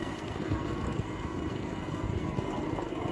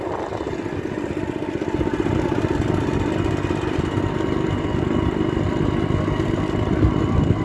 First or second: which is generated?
first